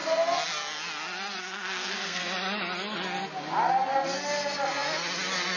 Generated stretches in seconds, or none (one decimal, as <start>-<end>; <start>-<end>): 1.4-2.2